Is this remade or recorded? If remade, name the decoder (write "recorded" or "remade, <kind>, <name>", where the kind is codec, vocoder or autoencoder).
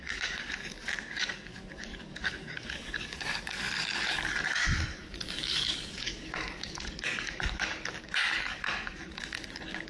remade, codec, DAC